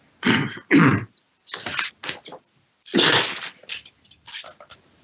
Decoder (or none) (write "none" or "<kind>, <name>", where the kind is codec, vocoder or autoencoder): none